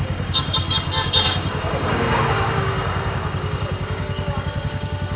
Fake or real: fake